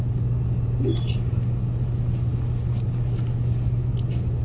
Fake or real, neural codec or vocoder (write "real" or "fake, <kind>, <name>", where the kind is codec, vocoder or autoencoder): real